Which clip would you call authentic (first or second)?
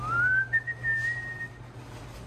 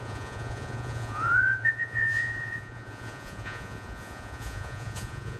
first